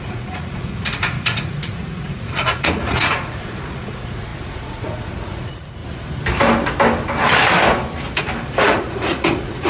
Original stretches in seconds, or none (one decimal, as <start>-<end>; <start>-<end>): 5.8-8.6